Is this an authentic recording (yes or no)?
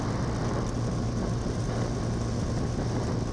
yes